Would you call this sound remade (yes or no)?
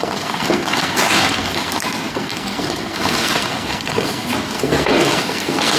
yes